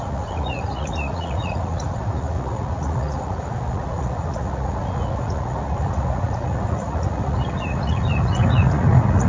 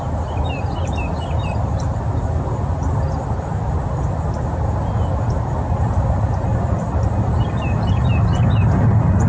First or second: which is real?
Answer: second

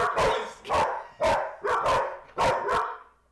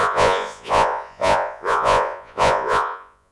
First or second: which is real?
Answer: first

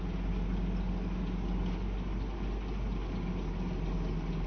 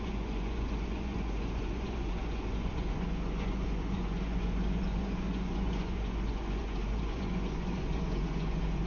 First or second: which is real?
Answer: first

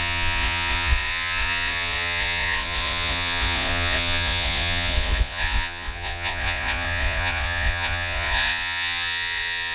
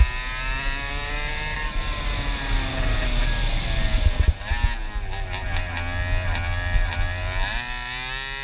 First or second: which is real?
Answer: second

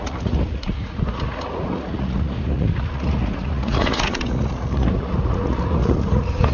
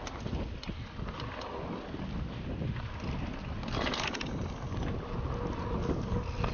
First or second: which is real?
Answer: second